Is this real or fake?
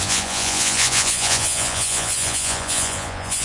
fake